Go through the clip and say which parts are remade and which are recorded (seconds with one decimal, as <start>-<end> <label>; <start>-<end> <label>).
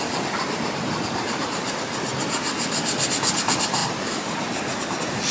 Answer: 0.0-2.1 remade; 2.1-3.4 recorded; 3.4-5.3 remade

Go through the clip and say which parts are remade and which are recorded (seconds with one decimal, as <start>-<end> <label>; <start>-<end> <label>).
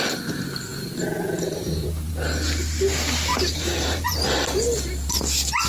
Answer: 0.0-0.7 recorded; 0.7-2.1 remade; 2.1-3.3 recorded; 3.3-4.9 remade; 4.9-5.7 recorded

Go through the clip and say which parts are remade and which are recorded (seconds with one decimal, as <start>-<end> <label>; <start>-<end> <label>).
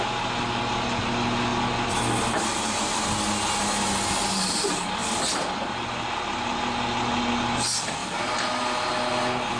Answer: 0.0-9.6 recorded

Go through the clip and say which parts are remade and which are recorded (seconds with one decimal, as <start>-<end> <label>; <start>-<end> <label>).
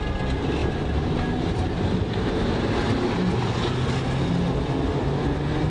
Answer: 0.0-0.6 recorded; 0.6-4.0 remade; 4.0-5.7 recorded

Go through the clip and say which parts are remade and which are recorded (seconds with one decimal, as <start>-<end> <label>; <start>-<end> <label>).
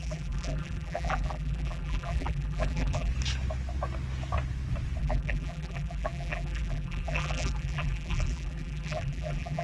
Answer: 0.0-3.1 remade; 3.1-5.0 recorded; 5.0-9.6 remade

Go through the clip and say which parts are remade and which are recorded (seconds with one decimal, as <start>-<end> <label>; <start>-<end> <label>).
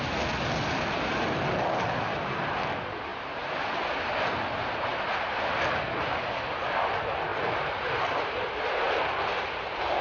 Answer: 0.0-2.1 recorded; 2.1-2.7 remade; 2.7-7.3 recorded; 7.3-7.9 remade; 7.9-10.0 recorded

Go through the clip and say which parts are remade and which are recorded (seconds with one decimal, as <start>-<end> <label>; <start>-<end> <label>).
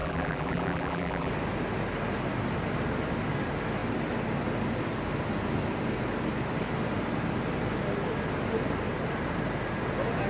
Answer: 0.0-1.3 remade; 1.3-10.3 recorded